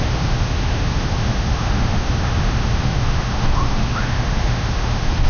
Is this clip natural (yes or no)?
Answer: no